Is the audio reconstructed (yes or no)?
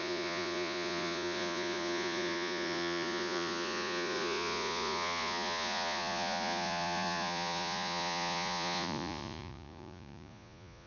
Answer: yes